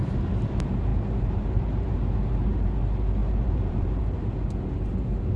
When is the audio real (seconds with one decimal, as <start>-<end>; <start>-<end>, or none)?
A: 0.0-0.9; 2.0-3.2; 4.0-5.4